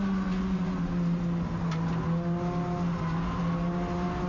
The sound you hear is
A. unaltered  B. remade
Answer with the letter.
A